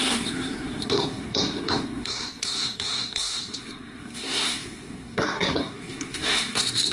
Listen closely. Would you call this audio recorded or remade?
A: remade